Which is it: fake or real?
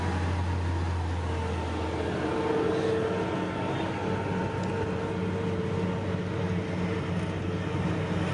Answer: real